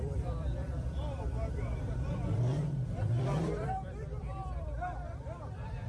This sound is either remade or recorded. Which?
remade